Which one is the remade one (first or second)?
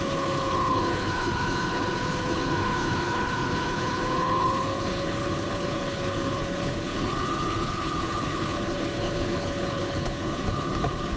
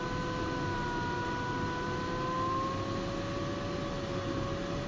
first